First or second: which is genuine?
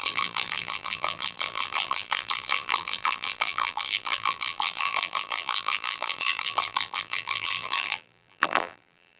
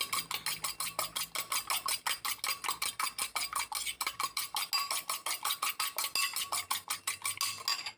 second